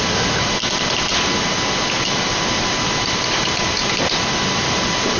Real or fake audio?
fake